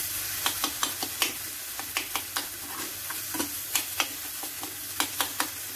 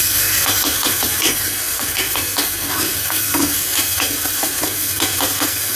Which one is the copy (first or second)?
second